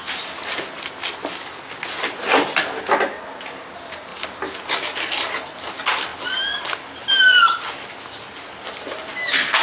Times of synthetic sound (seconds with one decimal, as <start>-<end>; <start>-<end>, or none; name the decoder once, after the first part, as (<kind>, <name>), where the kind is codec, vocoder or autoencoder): none